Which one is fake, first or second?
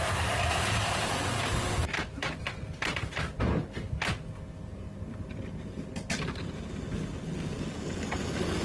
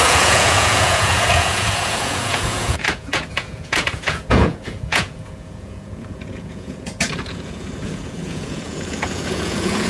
second